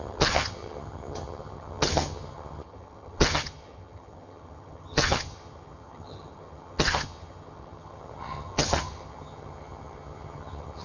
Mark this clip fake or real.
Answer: fake